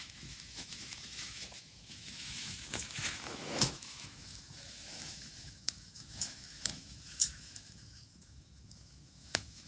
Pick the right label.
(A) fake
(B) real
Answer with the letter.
A